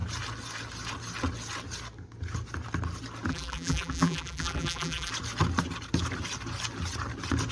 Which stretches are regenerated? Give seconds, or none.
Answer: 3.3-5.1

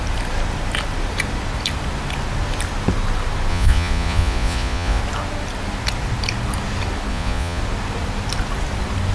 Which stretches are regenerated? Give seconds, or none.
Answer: 3.5-5.0; 7.1-7.6

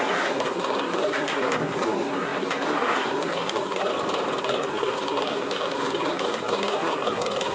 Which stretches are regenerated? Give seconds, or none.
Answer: 0.0-3.9; 4.4-7.5

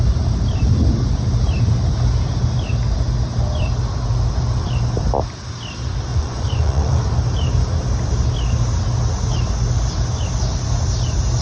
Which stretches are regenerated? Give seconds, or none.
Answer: 6.1-7.0

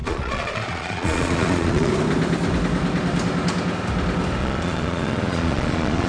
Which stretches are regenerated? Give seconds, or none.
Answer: 0.0-1.9; 4.4-6.1

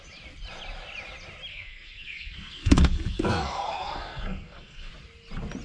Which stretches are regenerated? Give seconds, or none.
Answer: 1.5-4.9

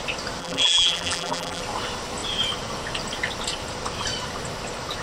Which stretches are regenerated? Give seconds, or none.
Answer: 0.4-1.6